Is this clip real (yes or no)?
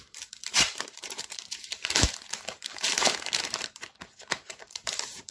no